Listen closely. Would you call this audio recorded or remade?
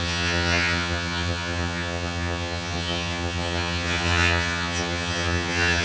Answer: remade